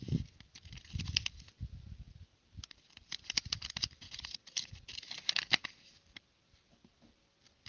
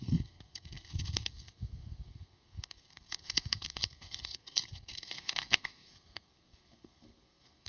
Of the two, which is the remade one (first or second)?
second